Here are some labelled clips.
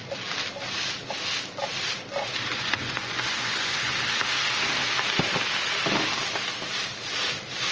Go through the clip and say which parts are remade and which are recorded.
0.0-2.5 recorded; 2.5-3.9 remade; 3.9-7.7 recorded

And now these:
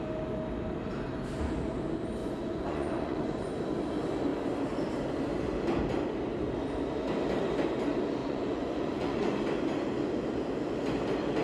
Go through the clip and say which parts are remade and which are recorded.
0.0-2.2 recorded; 2.2-3.5 remade; 3.5-8.2 recorded; 8.2-9.4 remade; 9.4-11.4 recorded